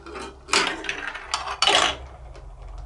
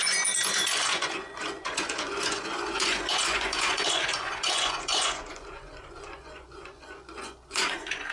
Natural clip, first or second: first